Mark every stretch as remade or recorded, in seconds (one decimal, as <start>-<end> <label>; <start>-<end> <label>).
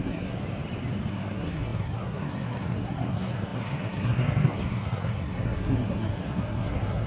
0.0-0.4 remade; 0.4-1.1 recorded; 1.1-7.1 remade